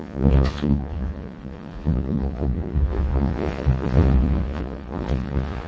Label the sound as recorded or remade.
remade